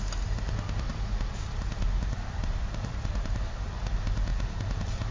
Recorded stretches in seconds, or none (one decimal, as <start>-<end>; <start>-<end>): 0.0-0.9; 3.8-5.1